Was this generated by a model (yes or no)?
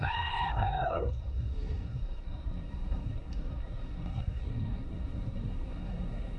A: yes